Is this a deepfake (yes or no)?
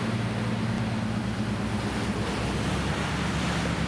no